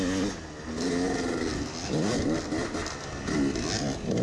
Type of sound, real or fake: real